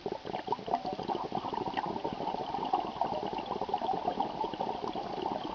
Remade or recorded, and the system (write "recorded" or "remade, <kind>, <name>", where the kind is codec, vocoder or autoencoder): recorded